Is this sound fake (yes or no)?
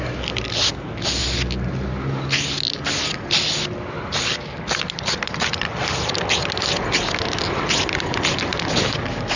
no